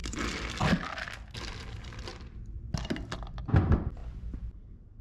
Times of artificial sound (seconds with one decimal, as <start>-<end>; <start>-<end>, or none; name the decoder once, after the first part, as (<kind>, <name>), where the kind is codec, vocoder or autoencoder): 2.1-2.7 (vocoder, BigVGAN v2)